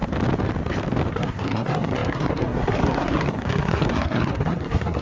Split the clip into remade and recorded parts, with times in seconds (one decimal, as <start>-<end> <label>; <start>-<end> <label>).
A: 0.0-1.1 recorded; 1.1-5.0 remade